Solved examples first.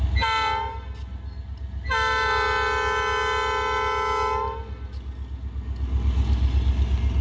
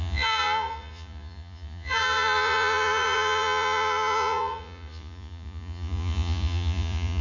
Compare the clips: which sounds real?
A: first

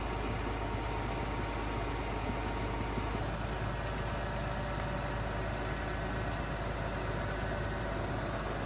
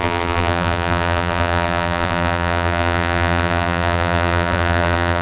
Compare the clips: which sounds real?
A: first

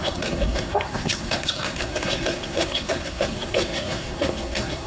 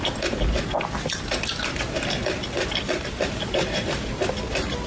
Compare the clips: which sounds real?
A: second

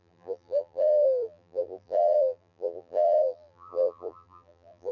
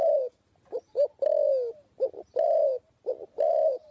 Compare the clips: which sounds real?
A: second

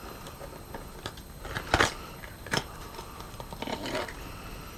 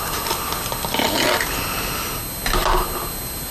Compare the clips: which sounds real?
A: second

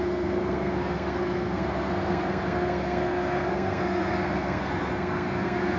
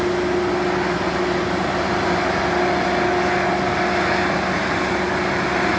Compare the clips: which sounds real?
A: second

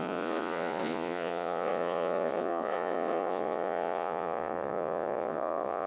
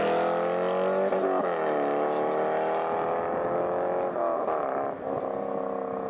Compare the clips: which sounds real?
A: second